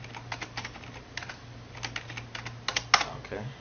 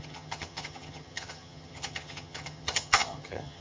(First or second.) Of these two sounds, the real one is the first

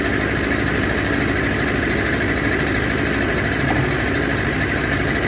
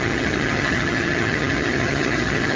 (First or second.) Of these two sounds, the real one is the first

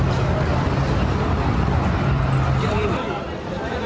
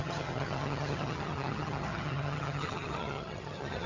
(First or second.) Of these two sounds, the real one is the first